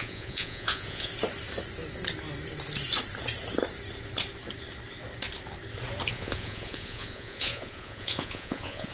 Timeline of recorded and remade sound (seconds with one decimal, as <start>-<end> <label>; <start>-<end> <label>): 0.0-1.1 remade; 1.1-6.1 recorded; 6.1-8.9 remade